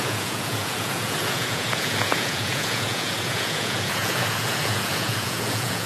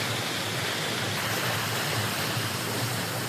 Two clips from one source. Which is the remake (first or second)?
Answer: first